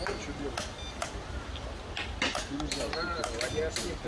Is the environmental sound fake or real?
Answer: real